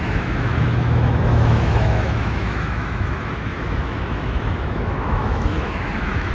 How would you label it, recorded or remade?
remade